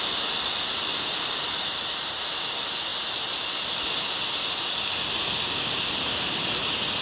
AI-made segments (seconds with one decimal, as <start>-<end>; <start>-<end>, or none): none